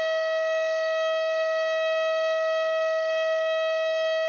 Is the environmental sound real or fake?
fake